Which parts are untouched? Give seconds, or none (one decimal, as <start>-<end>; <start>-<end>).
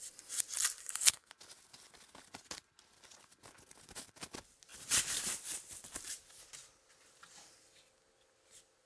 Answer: 0.0-0.8; 1.3-8.9